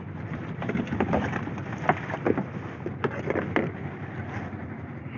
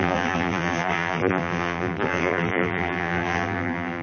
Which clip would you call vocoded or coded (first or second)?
second